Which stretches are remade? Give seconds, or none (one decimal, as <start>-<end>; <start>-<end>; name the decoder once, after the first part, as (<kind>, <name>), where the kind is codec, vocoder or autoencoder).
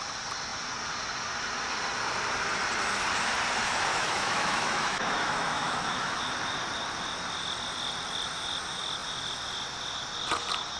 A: 3.9-6.2 (autoencoder, DAC-VAE)